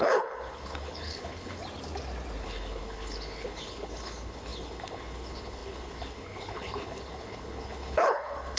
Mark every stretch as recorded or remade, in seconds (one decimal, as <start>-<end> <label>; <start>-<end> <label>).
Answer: 0.0-1.6 remade; 1.6-2.4 recorded; 2.4-8.6 remade